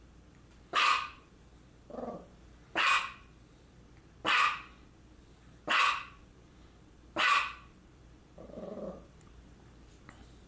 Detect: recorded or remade remade